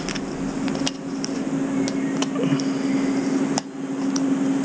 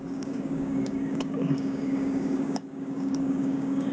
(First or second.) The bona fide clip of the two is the first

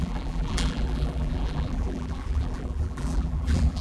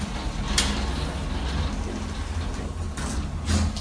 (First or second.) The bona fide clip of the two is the second